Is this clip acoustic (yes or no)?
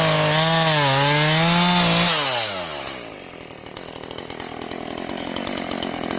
yes